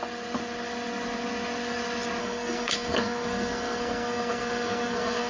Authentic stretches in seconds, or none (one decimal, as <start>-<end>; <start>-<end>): 0.0-2.2